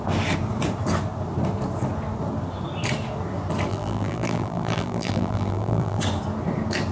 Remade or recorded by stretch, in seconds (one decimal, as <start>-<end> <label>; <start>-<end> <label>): 0.0-3.7 recorded; 3.7-6.0 remade; 6.0-6.9 recorded